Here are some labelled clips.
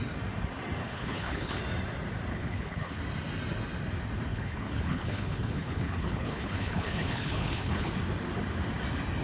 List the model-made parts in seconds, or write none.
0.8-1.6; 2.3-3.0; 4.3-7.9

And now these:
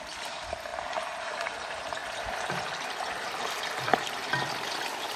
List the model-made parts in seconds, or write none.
2.0-4.3

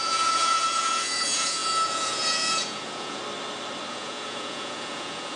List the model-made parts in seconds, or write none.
0.0-3.2; 3.9-5.4

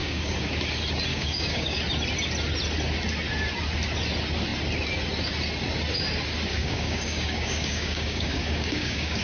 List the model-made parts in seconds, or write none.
0.0-0.6; 1.1-1.8; 6.5-9.2

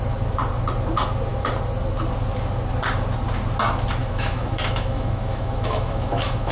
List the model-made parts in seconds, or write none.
4.0-6.5

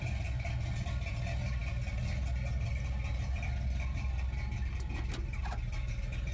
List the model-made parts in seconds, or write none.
none

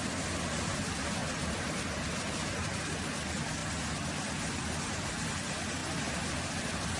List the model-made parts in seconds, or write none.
none

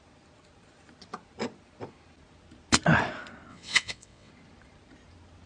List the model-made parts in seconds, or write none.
3.5-4.3